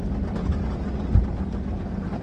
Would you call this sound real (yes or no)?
yes